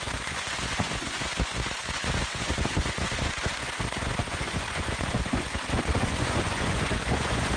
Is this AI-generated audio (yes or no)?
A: yes